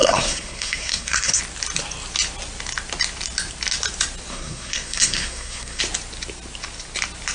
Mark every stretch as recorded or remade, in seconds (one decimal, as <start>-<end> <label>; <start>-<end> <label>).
0.0-1.4 remade; 1.4-4.3 recorded; 4.3-5.8 remade; 5.8-7.3 recorded